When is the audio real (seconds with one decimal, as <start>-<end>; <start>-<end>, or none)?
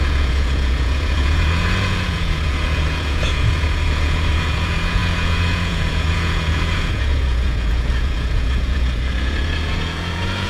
none